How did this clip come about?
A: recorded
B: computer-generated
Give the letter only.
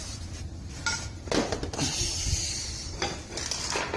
A